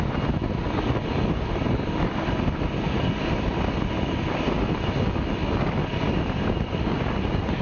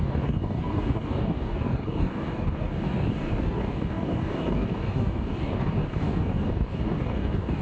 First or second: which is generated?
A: second